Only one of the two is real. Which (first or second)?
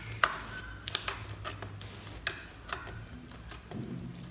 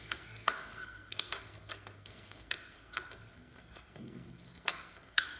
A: first